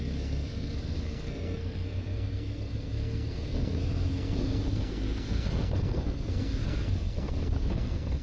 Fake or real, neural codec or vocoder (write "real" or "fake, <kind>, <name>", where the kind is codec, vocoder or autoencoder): fake, codec, SNAC